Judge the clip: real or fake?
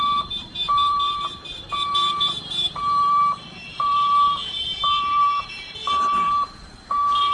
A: fake